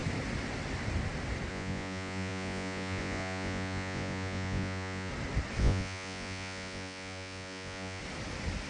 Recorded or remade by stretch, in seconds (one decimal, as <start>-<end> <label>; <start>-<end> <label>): 0.0-1.5 recorded; 1.5-5.1 remade; 5.1-5.6 recorded; 5.6-8.0 remade; 8.0-8.7 recorded